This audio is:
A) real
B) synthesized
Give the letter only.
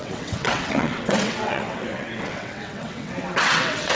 B